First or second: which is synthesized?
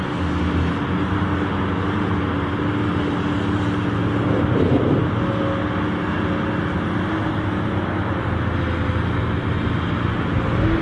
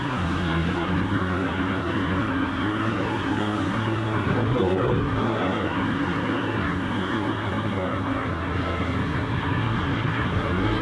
second